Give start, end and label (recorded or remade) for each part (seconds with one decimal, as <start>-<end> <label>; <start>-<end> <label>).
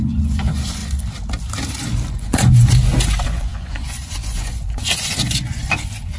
0.0-0.8 remade; 0.8-2.1 recorded; 2.1-6.2 remade